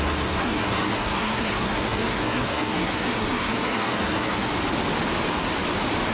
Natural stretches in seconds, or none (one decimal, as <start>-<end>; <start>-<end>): 4.5-6.1